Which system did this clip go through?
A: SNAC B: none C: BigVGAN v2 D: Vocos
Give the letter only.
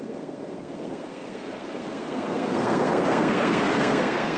A